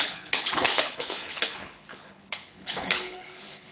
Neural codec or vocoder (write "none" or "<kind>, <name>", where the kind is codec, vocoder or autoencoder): codec, HILCodec